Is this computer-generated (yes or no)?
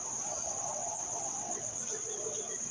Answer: yes